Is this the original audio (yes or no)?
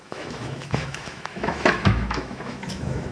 no